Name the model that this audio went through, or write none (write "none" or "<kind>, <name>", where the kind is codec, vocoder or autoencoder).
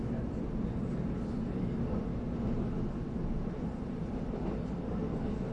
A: none